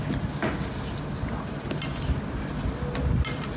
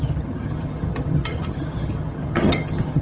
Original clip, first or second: first